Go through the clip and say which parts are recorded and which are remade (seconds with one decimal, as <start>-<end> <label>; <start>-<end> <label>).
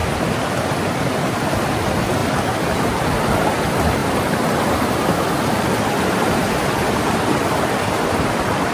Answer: 0.0-1.0 remade; 1.0-2.2 recorded; 2.2-2.8 remade; 2.8-4.0 recorded; 4.0-8.7 remade